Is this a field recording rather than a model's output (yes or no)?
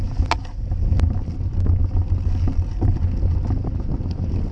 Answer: yes